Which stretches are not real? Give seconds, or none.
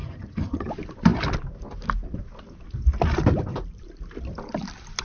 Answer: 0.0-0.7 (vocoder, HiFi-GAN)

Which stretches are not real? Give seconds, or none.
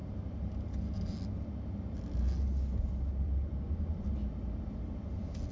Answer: 3.1-3.8 (vocoder, BigVGAN v2)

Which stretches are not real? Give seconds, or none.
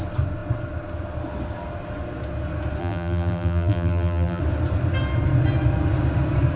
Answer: 2.8-4.4 (vocoder, BigVGAN v2)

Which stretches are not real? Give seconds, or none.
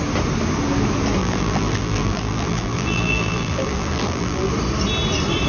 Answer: 1.2-4.5 (vocoder, BigVGAN v2)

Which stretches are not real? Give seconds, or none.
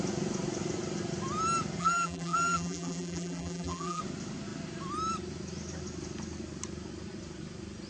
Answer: 1.8-4.0 (vocoder, BigVGAN v2)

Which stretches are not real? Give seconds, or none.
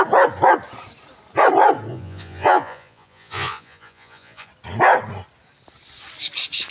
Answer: 1.9-4.5 (vocoder, Vocos)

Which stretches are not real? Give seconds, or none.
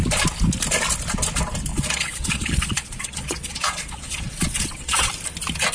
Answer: 1.7-5.1 (vocoder, Vocos)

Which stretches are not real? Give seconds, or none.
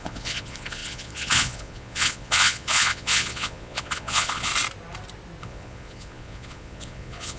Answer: 0.0-4.5 (vocoder, Vocos); 5.4-7.4